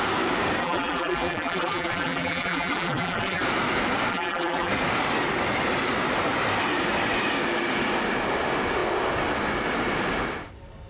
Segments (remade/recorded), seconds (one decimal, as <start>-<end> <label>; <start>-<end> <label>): 0.0-0.6 recorded; 0.6-3.4 remade; 3.4-4.1 recorded; 4.1-4.7 remade; 4.7-10.9 recorded